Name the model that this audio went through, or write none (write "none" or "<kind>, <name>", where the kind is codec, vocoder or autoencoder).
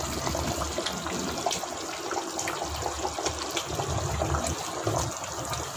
none